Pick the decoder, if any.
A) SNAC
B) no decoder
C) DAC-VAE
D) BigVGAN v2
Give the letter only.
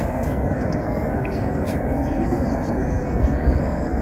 A